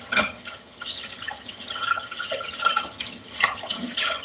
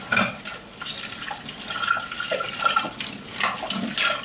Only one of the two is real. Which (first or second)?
second